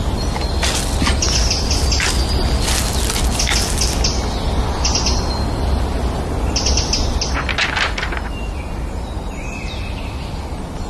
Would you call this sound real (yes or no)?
yes